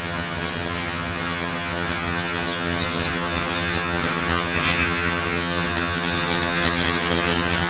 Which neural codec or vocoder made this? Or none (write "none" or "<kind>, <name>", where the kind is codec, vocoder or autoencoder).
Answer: vocoder, HiFi-GAN